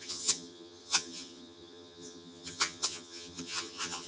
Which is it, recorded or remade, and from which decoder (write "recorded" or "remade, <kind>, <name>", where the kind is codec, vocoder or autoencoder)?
remade, vocoder, HiFi-GAN